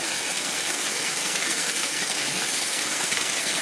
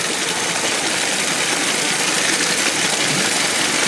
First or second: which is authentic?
second